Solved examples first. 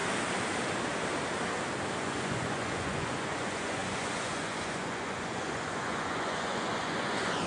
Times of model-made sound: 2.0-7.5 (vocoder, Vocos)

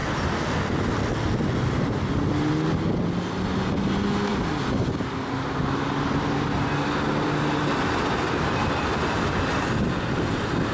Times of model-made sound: none